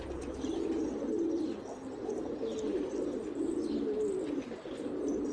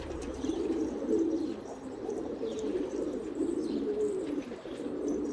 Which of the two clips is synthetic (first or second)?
second